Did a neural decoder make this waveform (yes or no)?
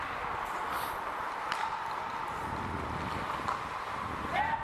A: no